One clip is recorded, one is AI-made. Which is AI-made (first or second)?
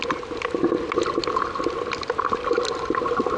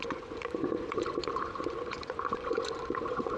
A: second